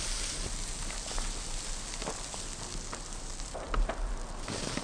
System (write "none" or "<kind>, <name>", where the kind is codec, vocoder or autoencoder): none